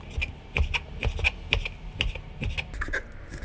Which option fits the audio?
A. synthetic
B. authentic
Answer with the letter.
B